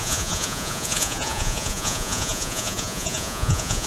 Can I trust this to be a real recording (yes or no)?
no